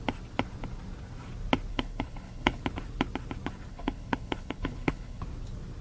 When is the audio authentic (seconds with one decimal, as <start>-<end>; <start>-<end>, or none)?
0.0-1.7; 2.6-3.7; 5.2-5.8